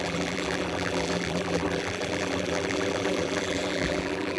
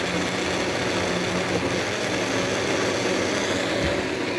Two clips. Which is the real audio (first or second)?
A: second